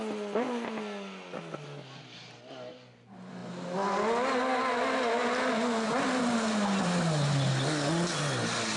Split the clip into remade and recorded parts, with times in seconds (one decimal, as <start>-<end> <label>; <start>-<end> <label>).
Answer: 0.0-8.8 recorded